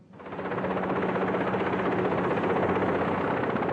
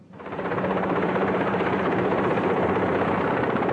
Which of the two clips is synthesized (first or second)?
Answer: second